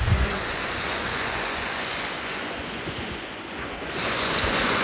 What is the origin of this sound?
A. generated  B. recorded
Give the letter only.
A